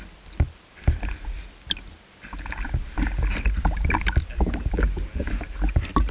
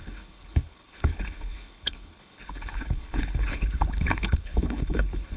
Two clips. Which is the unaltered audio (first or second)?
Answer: first